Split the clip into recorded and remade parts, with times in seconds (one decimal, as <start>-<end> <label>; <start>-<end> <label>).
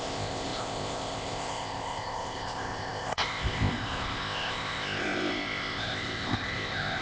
0.0-7.0 remade